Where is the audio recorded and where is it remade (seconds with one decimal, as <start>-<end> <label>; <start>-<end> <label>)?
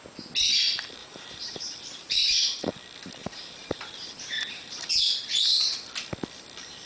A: 0.0-1.0 recorded; 1.0-2.7 remade; 2.7-3.2 recorded; 3.2-4.9 remade; 4.9-6.9 recorded